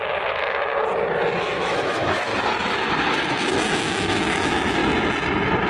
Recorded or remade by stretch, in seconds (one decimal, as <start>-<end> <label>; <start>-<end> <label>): 0.0-0.7 remade; 0.7-1.4 recorded; 1.4-2.3 remade; 2.3-3.8 recorded; 3.8-4.8 remade; 4.8-5.7 recorded